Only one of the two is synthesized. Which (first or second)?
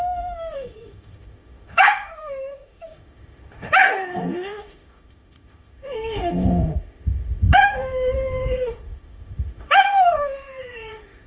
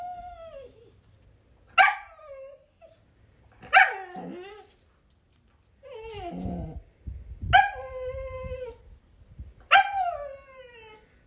first